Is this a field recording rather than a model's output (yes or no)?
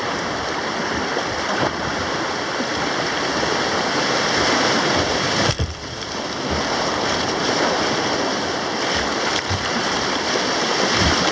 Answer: no